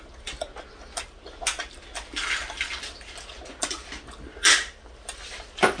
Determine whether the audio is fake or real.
real